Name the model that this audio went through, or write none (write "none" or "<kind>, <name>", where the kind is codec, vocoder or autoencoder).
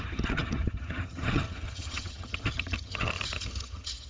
vocoder, HiFi-GAN